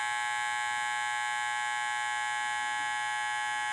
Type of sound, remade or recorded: recorded